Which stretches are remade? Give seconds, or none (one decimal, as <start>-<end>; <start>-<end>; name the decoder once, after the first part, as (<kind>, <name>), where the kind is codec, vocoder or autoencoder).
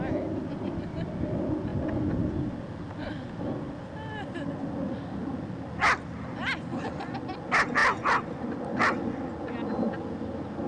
none